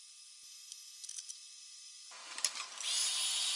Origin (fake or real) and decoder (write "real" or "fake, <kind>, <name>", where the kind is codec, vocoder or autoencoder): real